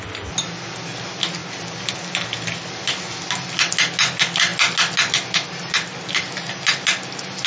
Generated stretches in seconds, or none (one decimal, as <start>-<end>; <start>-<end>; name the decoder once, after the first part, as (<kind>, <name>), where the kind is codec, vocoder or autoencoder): none